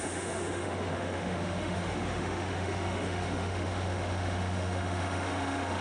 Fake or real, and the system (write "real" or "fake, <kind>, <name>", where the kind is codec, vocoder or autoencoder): fake, autoencoder, DAC-VAE